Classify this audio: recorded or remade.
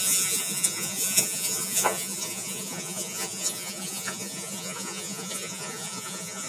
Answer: remade